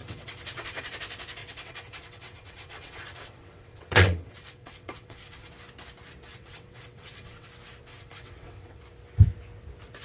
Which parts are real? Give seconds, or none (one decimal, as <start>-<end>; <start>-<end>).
0.9-1.4; 5.5-6.3; 7.5-7.9; 8.8-10.0